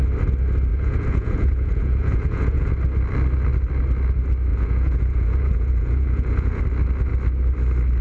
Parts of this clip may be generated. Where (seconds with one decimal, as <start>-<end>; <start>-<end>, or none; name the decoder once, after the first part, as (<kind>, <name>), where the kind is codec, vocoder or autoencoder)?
0.7-2.7 (vocoder, Vocos); 4.5-6.6